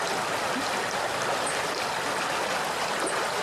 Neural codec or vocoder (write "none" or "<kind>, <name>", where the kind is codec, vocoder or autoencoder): none